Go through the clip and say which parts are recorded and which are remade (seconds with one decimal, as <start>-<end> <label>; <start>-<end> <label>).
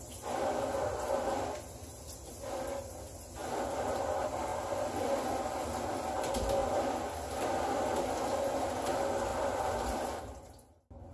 0.0-6.6 recorded; 6.6-8.0 remade; 8.0-9.3 recorded; 9.3-10.2 remade; 10.2-11.1 recorded